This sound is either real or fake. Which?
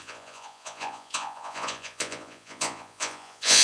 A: fake